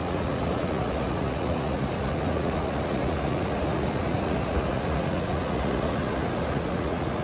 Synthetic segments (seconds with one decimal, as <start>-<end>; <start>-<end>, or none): 0.0-7.2